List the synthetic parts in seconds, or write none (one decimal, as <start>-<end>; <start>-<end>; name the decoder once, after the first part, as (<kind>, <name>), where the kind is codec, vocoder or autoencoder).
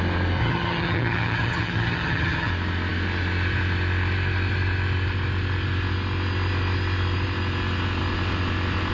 0.4-2.5 (vocoder, HiFi-GAN)